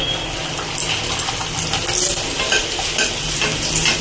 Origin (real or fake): real